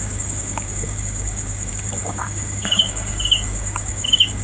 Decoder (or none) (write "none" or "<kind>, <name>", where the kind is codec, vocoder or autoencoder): codec, DAC